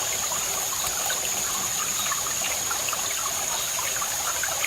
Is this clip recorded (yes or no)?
no